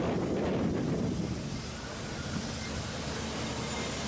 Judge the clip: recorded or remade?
recorded